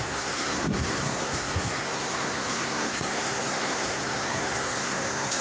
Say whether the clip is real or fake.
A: fake